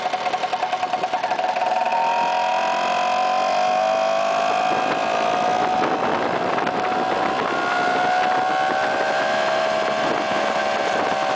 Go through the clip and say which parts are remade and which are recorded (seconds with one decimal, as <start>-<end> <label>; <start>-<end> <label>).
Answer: 0.0-11.4 recorded